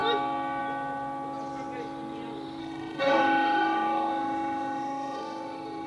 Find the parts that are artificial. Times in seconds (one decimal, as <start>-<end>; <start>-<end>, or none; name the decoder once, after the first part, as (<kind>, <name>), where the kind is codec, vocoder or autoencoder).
2.6-5.9 (autoencoder, DAC-VAE)